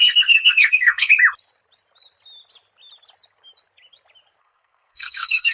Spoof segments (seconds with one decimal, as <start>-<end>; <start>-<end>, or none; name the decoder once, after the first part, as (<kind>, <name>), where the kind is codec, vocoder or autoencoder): 0.0-1.1 (codec, SNAC); 4.4-5.5